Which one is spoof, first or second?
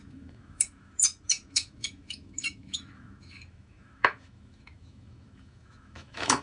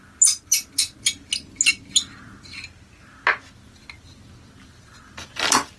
first